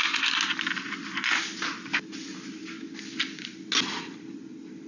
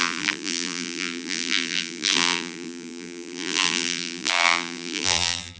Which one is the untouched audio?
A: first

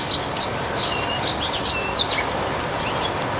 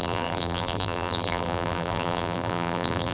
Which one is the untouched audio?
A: first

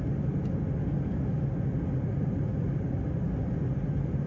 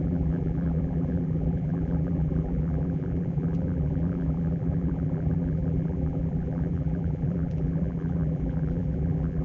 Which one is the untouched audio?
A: first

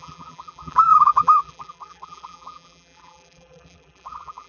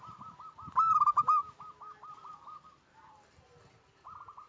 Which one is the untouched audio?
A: second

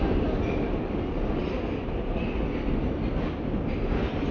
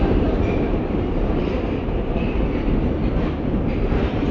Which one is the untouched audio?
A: first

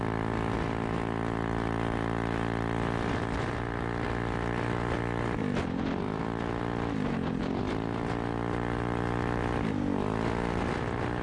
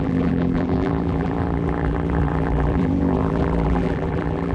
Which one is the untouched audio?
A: first